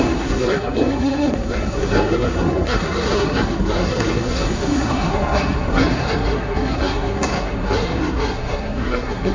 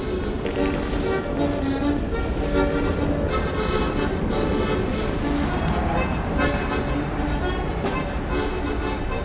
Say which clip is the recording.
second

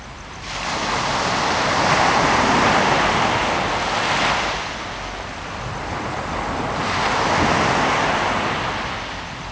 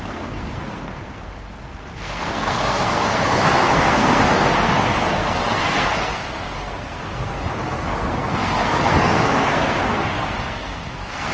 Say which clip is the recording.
first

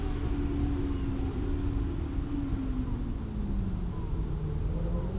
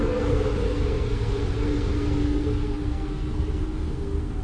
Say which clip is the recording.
first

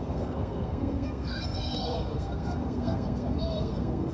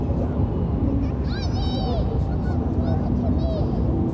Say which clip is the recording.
second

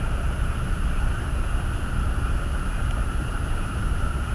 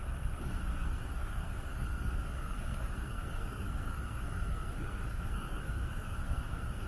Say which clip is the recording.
first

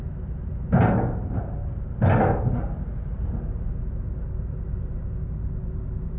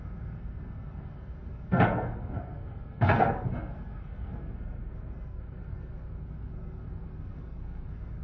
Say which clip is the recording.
first